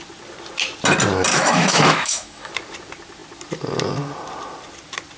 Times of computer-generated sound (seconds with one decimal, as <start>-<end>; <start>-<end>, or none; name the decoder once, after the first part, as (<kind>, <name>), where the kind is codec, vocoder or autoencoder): 1.3-2.5 (autoencoder, DAC-VAE)